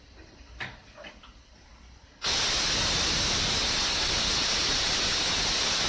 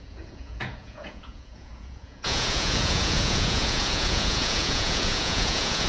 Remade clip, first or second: second